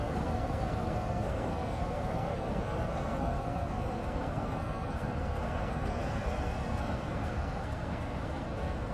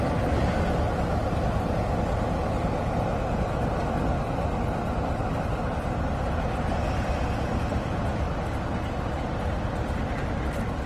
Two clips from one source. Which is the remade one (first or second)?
first